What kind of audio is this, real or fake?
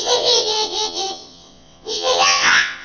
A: fake